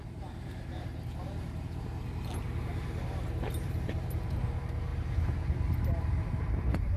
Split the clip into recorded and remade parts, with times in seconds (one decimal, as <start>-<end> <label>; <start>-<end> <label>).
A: 0.0-4.9 remade; 4.9-6.3 recorded; 6.3-7.0 remade